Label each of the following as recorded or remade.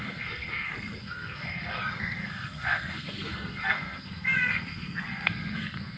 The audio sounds remade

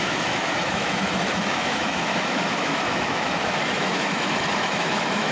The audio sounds remade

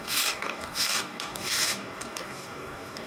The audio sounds remade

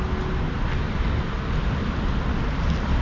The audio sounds recorded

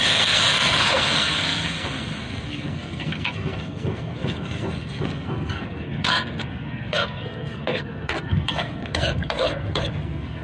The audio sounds remade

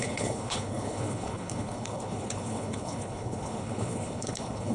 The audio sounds remade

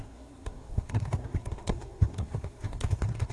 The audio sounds remade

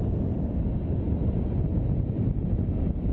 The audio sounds recorded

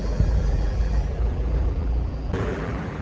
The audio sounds remade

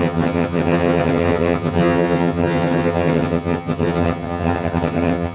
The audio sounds remade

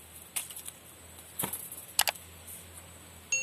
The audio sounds recorded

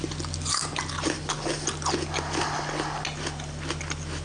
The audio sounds recorded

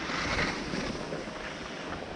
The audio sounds recorded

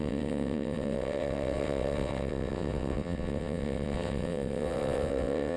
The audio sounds remade